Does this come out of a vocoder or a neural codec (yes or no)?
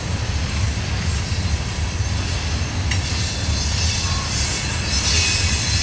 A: no